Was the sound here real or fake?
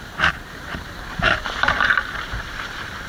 fake